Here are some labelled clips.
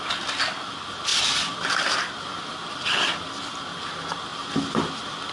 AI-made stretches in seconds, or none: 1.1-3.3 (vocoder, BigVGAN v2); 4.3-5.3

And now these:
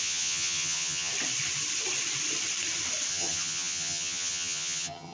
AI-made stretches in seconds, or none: 0.0-1.1 (vocoder, HiFi-GAN); 3.1-5.1

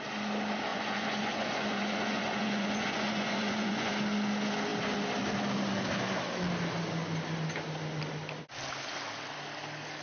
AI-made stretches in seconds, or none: 0.7-3.9 (vocoder, Vocos)

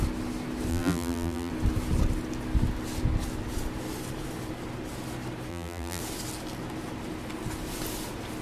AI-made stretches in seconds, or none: 0.7-1.5 (vocoder, BigVGAN v2); 5.5-6.0

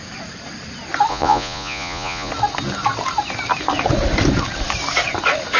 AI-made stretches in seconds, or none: 1.1-2.3 (vocoder, Vocos)

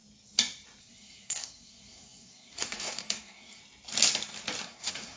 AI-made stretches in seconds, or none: 0.8-3.6 (codec, SNAC); 4.6-5.2

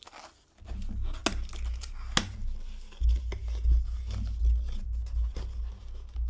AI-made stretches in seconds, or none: none